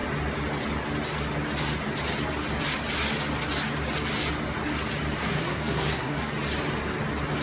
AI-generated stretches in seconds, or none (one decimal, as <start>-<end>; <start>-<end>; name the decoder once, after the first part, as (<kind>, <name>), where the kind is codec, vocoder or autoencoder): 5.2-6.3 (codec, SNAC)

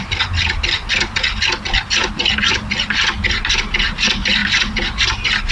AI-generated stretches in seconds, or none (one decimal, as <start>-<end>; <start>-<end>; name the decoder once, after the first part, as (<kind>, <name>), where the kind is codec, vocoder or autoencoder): 4.4-5.5 (vocoder, BigVGAN v2)

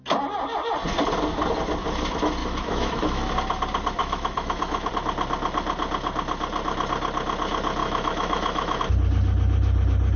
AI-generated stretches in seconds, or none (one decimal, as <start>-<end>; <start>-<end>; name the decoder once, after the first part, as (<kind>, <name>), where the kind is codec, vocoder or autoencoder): 2.4-3.3 (autoencoder, DAC-VAE); 4.0-4.9; 7.8-8.8